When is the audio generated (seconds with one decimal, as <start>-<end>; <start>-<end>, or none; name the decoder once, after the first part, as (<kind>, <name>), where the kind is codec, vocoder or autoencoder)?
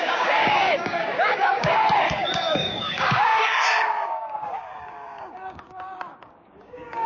0.0-7.1 (codec, DAC)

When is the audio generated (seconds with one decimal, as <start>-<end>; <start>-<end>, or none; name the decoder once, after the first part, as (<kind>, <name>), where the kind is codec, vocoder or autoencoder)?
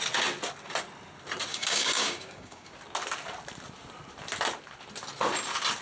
1.5-2.7 (codec, DAC)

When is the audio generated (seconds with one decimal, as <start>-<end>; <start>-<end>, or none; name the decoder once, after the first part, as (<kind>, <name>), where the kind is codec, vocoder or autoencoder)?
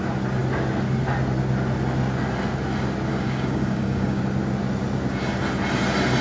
3.1-4.2 (codec, DAC)